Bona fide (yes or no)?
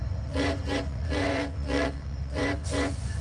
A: no